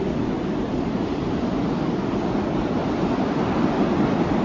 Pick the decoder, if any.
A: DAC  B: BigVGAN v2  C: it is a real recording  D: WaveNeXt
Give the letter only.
C